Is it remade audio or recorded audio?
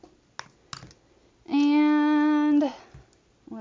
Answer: recorded